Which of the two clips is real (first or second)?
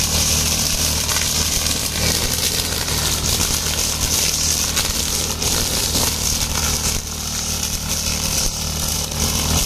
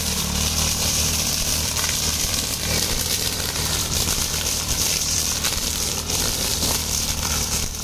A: first